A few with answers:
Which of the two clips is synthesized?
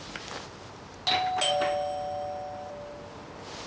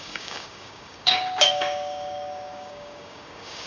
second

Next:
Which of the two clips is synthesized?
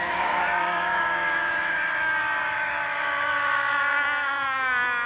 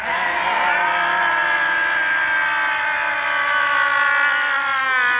first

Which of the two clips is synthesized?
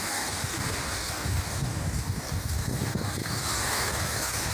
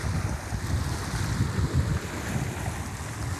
first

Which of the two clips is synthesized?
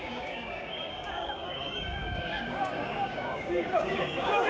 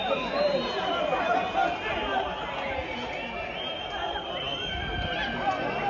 first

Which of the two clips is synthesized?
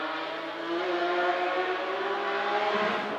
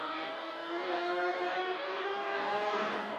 second